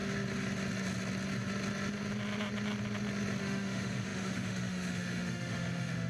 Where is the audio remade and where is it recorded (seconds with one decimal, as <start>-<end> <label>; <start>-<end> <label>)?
0.0-3.4 recorded; 3.4-6.1 remade